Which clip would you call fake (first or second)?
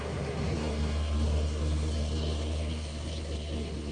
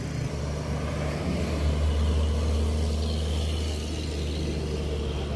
first